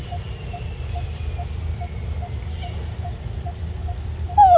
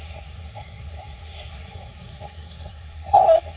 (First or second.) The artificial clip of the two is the second